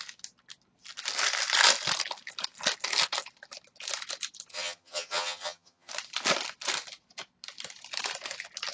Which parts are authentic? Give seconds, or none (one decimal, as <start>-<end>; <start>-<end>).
0.0-4.5; 5.9-8.7